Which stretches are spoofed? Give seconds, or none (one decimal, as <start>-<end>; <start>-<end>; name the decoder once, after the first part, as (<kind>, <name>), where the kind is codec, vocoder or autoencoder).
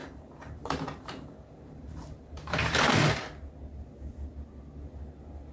0.0-2.9 (vocoder, BigVGAN v2)